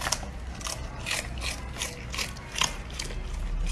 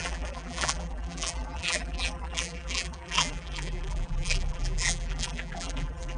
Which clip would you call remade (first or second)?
second